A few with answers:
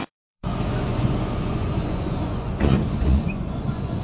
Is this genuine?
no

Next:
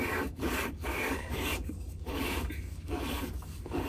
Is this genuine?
no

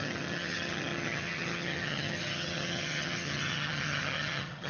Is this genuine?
no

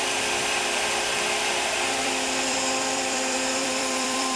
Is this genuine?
no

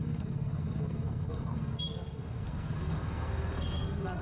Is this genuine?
no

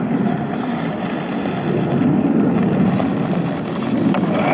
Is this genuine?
yes